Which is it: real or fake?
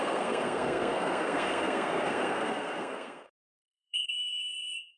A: fake